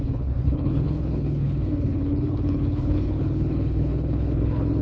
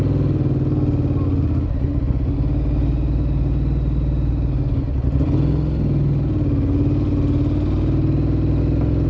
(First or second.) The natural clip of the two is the second